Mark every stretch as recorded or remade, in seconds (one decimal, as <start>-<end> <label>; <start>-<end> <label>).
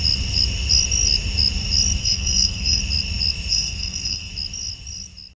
0.0-2.0 recorded; 2.0-2.8 remade; 2.8-3.5 recorded; 3.5-4.3 remade; 4.3-5.4 recorded